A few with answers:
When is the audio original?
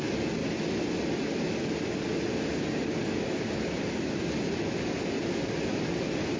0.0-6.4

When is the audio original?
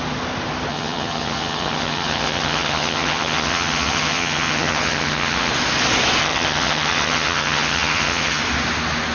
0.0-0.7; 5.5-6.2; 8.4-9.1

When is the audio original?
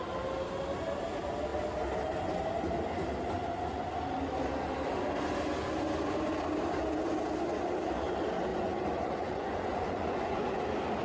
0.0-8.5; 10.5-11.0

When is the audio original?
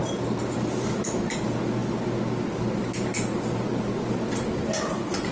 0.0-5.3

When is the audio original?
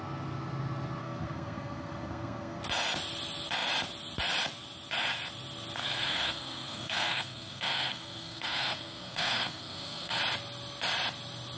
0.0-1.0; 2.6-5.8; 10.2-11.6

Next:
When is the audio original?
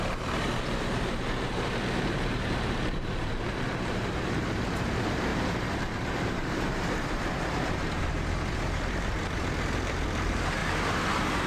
10.6-11.5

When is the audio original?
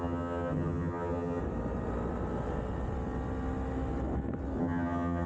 1.4-4.6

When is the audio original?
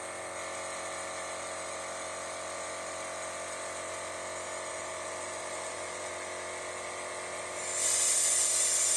0.0-4.7; 6.1-9.0